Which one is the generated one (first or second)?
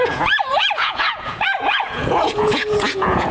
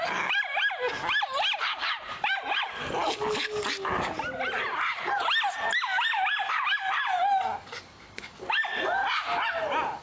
first